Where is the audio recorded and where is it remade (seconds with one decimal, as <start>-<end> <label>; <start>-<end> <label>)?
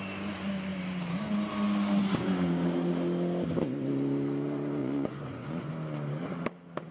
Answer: 0.0-4.8 recorded; 4.8-5.7 remade; 5.7-6.9 recorded